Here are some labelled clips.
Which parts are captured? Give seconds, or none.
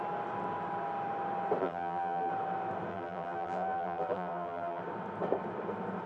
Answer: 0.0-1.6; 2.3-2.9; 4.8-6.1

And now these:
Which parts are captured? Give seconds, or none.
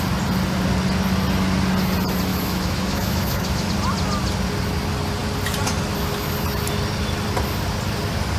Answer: 0.0-2.3; 3.7-8.4